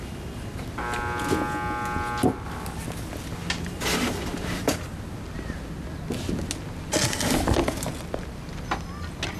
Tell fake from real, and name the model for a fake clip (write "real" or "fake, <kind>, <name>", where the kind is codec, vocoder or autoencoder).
real